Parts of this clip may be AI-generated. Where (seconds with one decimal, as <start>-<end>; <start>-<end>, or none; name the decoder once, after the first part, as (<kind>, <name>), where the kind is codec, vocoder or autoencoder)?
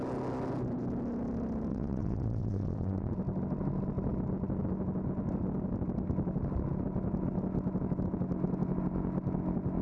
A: 1.7-3.1 (vocoder, WaveNeXt)